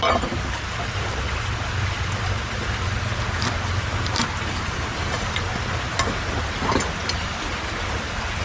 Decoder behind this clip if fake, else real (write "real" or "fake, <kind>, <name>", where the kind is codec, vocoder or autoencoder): real